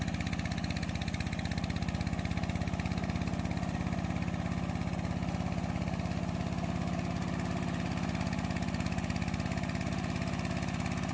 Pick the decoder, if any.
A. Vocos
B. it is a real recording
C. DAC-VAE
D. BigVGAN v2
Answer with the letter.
B